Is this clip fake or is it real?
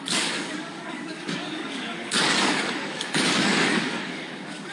fake